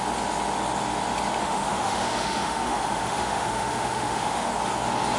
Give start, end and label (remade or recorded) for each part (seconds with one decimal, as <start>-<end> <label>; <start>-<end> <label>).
0.0-1.4 recorded; 1.4-4.5 remade; 4.5-5.2 recorded